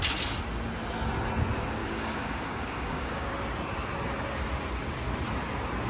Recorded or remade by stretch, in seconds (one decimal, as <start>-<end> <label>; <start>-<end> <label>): 0.0-1.8 recorded; 1.8-3.3 remade; 3.3-5.9 recorded